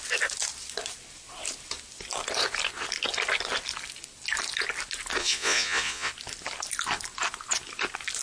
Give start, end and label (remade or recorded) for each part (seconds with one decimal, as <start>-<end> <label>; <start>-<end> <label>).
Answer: 0.0-5.2 recorded; 5.2-6.1 remade; 6.1-8.2 recorded